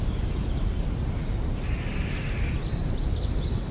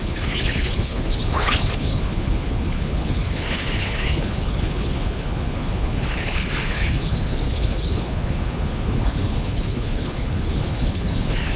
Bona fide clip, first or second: first